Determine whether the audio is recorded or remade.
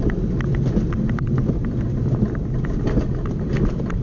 recorded